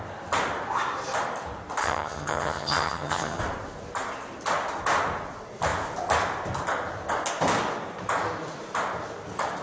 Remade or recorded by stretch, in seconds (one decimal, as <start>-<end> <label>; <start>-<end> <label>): 0.0-1.8 recorded; 1.8-3.4 remade; 3.4-9.6 recorded